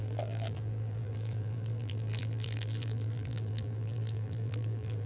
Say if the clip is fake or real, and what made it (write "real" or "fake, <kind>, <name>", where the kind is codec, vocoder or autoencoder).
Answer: fake, vocoder, BigVGAN v2